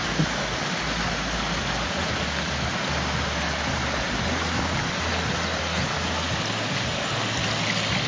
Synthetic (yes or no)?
no